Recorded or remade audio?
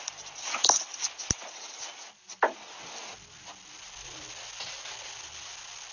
recorded